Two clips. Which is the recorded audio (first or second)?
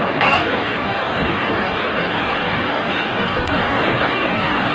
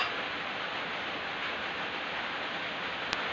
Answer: second